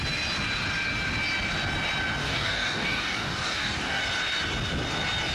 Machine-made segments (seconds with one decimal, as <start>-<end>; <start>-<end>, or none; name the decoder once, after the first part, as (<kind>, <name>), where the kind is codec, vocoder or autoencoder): 2.2-4.0 (codec, DAC)